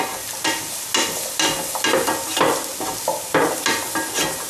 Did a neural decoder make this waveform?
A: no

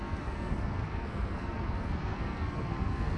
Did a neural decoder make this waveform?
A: yes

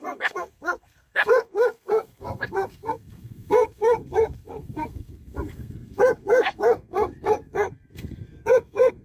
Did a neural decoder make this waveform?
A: yes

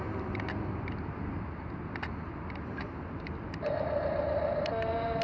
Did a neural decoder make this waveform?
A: no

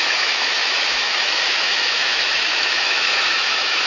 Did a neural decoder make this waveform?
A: yes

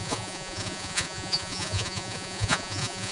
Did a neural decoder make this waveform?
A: yes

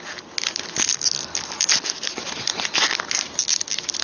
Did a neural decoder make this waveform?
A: no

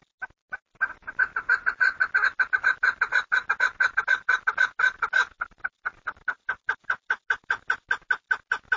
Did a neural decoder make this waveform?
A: no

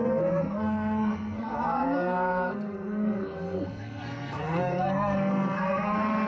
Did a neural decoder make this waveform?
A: yes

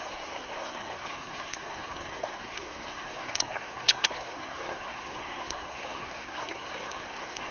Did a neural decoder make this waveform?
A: yes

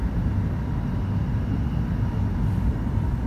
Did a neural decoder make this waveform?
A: no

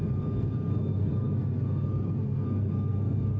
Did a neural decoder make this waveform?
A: yes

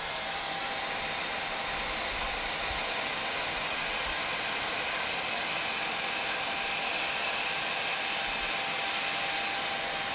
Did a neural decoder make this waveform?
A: no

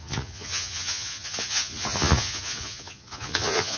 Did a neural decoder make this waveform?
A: yes